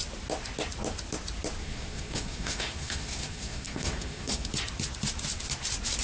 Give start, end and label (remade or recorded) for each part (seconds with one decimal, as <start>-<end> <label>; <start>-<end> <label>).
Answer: 0.0-1.6 recorded; 1.6-4.5 remade; 4.5-6.0 recorded